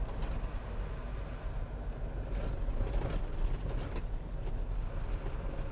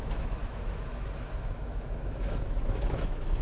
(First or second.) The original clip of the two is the first